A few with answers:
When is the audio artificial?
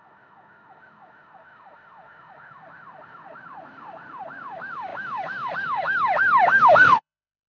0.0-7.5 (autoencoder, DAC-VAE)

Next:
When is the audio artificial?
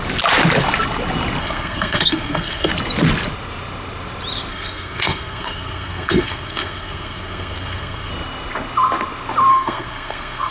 1.4-2.7 (codec, SNAC); 4.5-8.1; 9.5-10.5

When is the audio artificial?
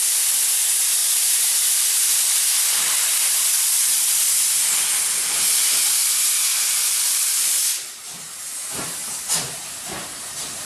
1.0-4.7 (vocoder, BigVGAN v2); 9.0-10.6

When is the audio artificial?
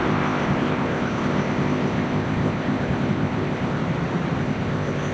0.0-3.8 (codec, ZipCodec); 4.4-5.1